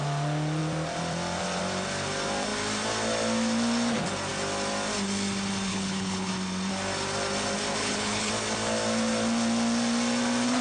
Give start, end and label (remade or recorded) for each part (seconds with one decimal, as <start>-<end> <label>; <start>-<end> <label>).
0.0-5.7 recorded; 5.7-6.3 remade; 6.3-7.8 recorded; 7.8-8.3 remade; 8.3-10.6 recorded